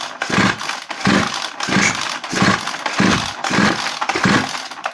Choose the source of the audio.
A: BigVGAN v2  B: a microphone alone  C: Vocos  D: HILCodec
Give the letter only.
B